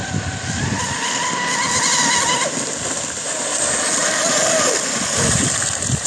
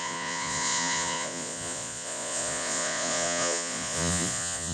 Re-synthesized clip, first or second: second